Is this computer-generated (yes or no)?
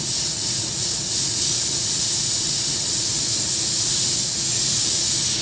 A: yes